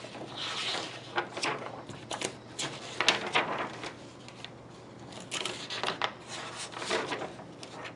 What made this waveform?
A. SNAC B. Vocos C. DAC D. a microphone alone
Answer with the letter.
D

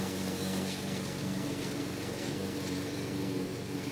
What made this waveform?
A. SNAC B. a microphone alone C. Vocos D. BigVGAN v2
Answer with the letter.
A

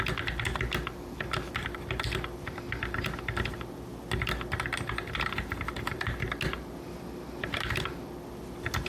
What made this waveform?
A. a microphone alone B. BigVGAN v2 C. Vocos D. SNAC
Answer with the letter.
A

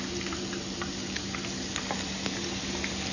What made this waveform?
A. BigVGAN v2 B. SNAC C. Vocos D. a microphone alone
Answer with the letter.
D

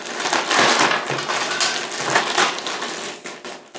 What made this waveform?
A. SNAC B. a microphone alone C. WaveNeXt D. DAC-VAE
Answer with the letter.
B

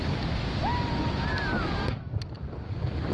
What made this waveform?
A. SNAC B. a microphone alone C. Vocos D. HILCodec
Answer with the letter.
B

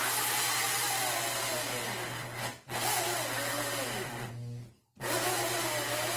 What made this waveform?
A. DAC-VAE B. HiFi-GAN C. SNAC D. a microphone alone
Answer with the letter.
D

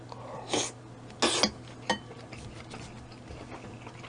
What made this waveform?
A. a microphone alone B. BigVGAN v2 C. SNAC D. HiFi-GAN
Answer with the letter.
A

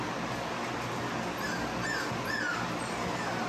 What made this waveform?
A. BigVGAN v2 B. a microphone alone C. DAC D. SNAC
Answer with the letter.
B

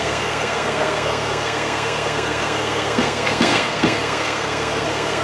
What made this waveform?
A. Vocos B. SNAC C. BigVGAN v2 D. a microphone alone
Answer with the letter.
B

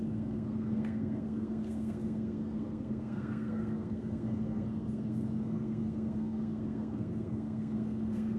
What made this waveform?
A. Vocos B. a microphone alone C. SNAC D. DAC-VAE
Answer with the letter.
C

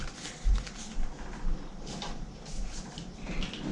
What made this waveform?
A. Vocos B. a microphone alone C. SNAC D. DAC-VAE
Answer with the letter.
B